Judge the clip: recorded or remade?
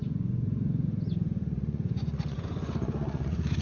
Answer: remade